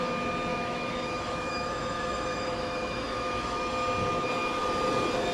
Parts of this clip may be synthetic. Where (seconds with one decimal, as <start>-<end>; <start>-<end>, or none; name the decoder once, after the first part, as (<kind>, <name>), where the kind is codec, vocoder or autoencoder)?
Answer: 0.5-3.7 (autoencoder, DAC-VAE)